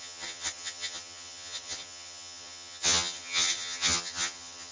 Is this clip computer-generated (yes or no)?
yes